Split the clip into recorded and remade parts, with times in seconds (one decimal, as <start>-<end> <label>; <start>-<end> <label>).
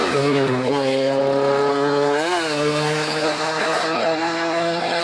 0.0-1.2 remade; 1.2-1.7 recorded; 1.7-5.0 remade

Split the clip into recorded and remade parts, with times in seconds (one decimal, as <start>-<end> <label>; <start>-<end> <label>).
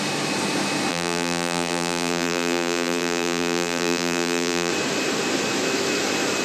0.0-0.9 recorded; 0.9-4.7 remade; 4.7-6.4 recorded